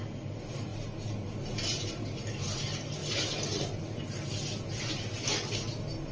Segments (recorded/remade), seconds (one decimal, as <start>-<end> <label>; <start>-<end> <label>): 0.0-6.1 recorded